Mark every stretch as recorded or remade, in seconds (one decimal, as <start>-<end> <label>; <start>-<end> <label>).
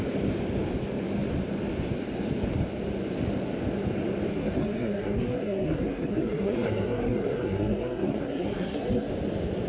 0.0-4.3 recorded; 4.3-9.1 remade; 9.1-9.7 recorded